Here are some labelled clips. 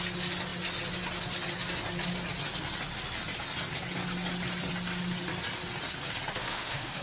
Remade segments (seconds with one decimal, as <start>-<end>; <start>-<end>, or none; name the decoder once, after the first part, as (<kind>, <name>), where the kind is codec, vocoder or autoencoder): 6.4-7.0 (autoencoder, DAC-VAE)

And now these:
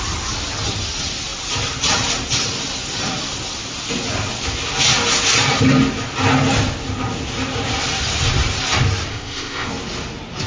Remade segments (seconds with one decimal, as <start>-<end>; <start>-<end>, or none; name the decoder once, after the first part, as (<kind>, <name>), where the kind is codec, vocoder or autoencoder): 9.1-9.7 (codec, ZipCodec)

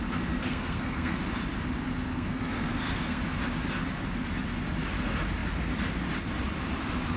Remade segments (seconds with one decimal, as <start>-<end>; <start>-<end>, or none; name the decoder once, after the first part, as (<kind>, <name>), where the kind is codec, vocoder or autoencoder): 0.5-1.2 (codec, SNAC); 2.1-3.2